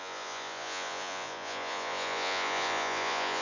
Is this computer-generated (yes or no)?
yes